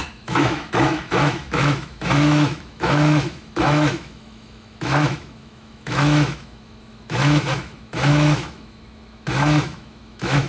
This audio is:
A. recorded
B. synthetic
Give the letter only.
B